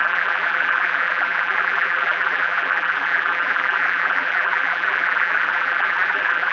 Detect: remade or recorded remade